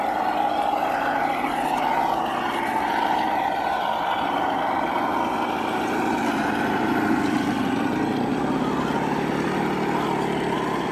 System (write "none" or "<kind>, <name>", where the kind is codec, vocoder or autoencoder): none